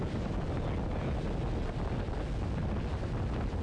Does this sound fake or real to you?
real